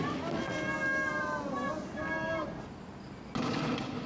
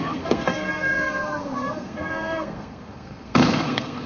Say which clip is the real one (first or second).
first